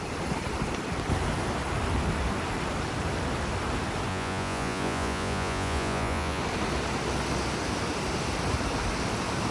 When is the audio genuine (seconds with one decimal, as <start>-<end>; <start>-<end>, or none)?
0.0-4.1; 6.4-9.5